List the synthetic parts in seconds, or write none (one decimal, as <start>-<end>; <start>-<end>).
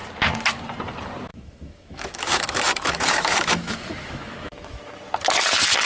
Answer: 1.3-4.8